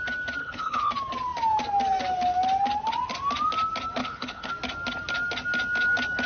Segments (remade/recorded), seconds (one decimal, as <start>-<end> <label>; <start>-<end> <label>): 0.0-0.4 recorded; 0.4-0.9 remade; 0.9-4.0 recorded; 4.0-4.5 remade; 4.5-6.3 recorded